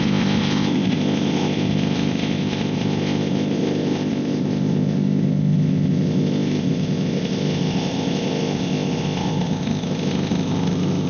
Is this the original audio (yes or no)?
no